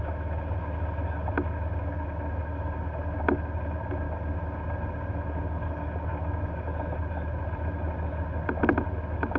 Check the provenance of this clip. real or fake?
real